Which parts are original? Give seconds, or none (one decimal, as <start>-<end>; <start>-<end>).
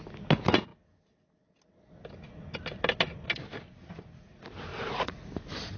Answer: 0.0-4.7; 5.3-5.8